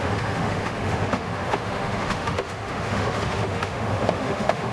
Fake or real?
fake